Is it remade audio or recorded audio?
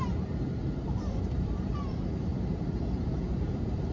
remade